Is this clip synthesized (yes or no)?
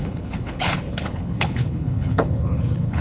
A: yes